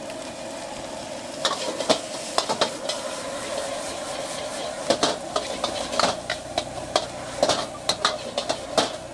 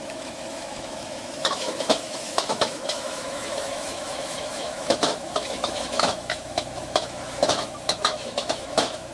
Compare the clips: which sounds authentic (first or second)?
first